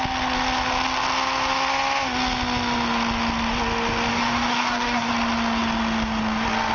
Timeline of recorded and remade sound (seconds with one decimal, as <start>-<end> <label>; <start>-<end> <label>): 0.0-4.1 recorded; 4.1-5.1 remade; 5.1-6.7 recorded